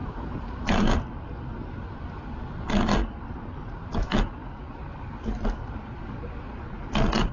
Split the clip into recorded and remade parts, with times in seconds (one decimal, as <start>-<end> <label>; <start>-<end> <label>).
0.0-7.3 recorded